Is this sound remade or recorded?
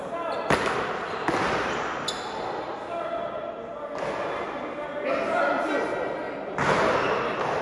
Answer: recorded